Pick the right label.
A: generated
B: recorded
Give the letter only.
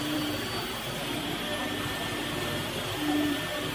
A